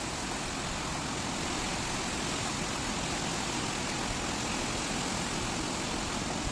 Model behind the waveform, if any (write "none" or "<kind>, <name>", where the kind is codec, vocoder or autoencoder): none